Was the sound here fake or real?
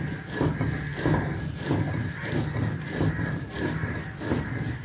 real